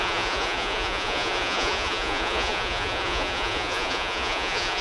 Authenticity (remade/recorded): remade